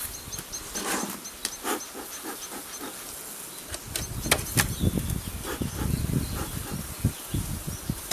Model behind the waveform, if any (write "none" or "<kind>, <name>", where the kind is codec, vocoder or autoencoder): none